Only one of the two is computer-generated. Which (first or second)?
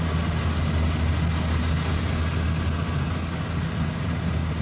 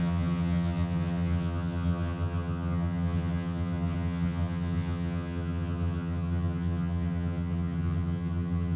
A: second